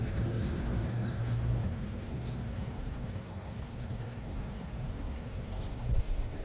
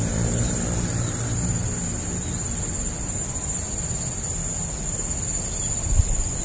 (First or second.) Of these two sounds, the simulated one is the first